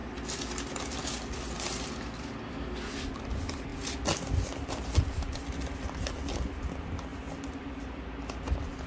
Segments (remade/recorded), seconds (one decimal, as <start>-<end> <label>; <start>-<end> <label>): 0.0-8.9 recorded